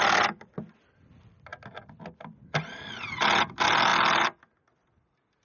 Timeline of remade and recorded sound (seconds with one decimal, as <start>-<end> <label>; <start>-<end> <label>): 0.0-5.4 recorded